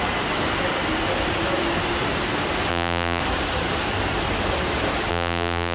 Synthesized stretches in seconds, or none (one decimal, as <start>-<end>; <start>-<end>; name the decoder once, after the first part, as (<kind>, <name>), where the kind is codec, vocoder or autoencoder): 2.7-3.2 (vocoder, BigVGAN v2); 5.1-5.7